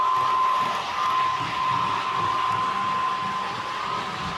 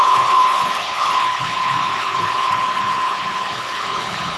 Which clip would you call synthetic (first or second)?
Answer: second